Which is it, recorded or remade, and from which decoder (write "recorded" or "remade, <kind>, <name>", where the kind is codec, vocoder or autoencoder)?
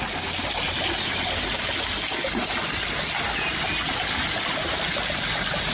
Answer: recorded